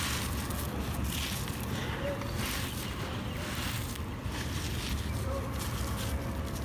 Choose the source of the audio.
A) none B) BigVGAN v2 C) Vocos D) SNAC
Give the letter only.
A